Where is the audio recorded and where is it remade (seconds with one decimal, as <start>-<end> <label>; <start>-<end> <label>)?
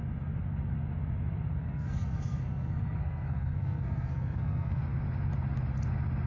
0.0-1.6 recorded; 1.6-4.8 remade; 4.8-6.3 recorded